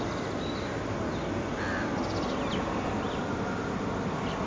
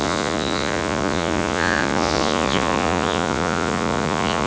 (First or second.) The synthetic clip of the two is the second